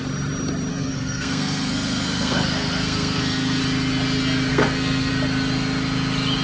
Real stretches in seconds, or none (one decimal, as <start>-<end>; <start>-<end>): 0.0-0.7; 3.6-4.5; 5.1-6.4